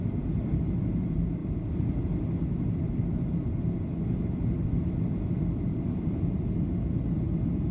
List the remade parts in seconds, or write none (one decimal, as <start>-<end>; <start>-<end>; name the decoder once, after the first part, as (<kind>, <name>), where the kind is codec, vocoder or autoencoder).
0.0-7.7 (vocoder, BigVGAN v2)

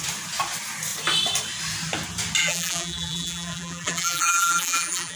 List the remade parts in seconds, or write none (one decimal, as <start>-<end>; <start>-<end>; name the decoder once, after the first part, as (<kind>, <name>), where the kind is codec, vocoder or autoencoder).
2.4-5.2 (vocoder, BigVGAN v2)

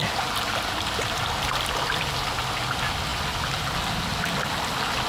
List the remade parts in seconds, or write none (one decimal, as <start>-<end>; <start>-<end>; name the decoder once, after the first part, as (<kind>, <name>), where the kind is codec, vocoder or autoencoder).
none

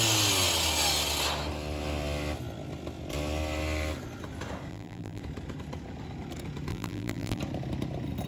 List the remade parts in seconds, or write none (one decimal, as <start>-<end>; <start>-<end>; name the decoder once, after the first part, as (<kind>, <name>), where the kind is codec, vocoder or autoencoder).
4.7-5.2 (vocoder, BigVGAN v2); 6.7-7.4

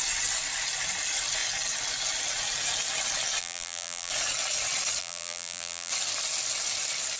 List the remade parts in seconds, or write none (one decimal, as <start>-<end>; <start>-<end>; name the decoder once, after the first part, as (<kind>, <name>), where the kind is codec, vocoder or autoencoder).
3.4-4.1 (vocoder, BigVGAN v2); 5.0-5.9

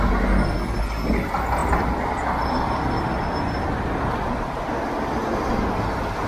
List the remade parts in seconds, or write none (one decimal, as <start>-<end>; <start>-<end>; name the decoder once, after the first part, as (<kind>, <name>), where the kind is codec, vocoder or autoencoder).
1.6-4.7 (vocoder, BigVGAN v2)

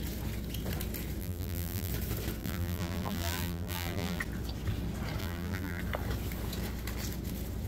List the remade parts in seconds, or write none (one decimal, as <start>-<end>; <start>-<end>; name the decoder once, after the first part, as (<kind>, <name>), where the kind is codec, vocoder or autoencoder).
1.2-1.9 (vocoder, BigVGAN v2); 2.4-4.2; 5.2-5.8